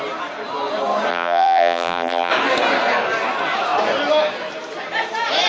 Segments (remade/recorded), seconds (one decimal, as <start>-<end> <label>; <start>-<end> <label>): 0.0-1.1 recorded; 1.1-2.3 remade; 2.3-5.5 recorded